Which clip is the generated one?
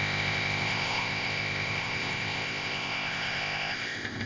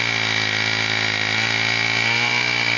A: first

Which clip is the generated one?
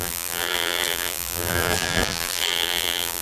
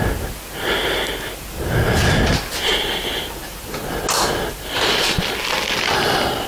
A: first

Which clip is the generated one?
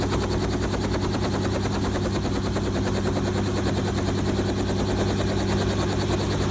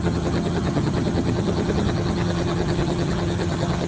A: second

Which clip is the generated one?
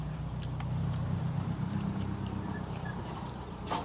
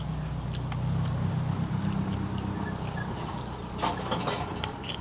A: first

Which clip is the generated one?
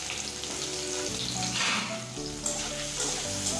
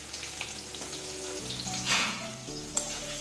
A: second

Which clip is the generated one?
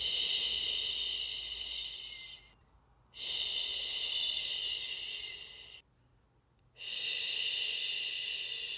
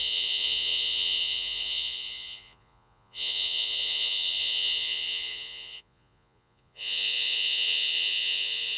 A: second